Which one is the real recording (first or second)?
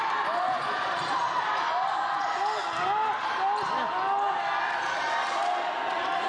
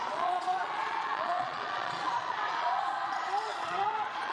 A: first